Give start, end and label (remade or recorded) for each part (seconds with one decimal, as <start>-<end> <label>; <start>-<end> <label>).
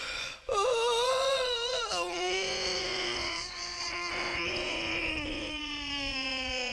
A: 0.0-6.7 remade